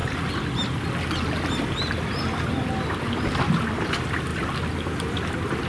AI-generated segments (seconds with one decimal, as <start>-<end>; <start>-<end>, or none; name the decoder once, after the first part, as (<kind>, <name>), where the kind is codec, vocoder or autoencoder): none